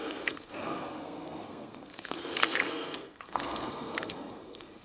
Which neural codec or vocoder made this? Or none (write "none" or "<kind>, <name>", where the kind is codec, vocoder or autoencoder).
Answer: codec, SNAC